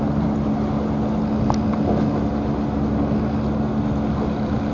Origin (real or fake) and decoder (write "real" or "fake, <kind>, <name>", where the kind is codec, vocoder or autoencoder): real